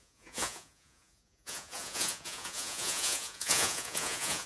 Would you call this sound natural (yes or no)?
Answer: no